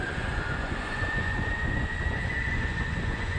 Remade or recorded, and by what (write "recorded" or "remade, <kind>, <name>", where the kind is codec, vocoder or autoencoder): remade, vocoder, Vocos